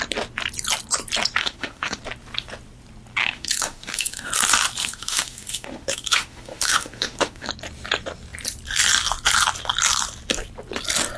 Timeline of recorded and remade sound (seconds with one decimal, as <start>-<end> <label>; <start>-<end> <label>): 0.0-1.4 recorded; 1.4-2.0 remade; 2.0-3.2 recorded; 3.2-4.3 remade; 4.3-4.8 recorded; 4.8-7.5 remade; 7.5-11.2 recorded